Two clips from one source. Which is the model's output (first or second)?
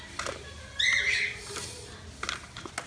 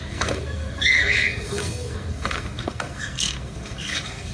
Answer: second